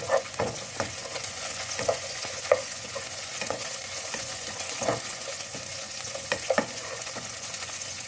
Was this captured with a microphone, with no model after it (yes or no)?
no